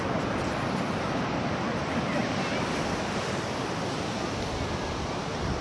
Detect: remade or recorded recorded